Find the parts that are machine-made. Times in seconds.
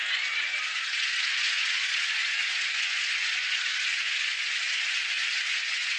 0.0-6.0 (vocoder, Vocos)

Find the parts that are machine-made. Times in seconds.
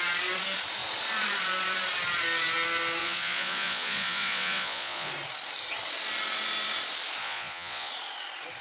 3.0-5.1 (vocoder, Vocos); 7.2-7.9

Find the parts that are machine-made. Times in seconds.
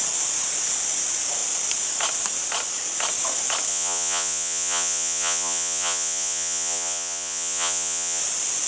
3.7-8.2 (vocoder, Vocos)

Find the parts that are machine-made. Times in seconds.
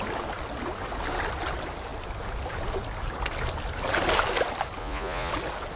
4.8-5.3 (vocoder, Vocos)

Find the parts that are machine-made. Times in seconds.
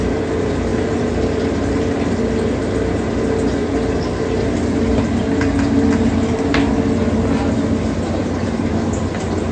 none